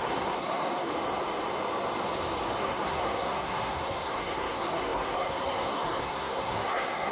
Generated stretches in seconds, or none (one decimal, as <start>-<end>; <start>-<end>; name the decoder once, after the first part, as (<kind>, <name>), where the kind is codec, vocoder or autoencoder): 0.0-0.9 (codec, SNAC); 2.6-7.1